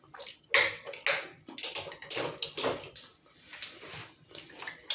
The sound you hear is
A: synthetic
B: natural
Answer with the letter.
B